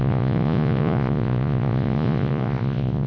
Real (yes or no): no